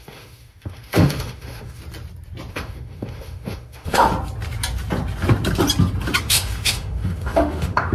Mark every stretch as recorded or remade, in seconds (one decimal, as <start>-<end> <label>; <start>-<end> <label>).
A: 0.0-1.8 remade; 1.8-2.5 recorded; 2.5-4.1 remade; 4.1-6.2 recorded; 6.2-7.9 remade